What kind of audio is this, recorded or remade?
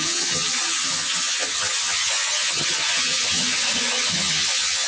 remade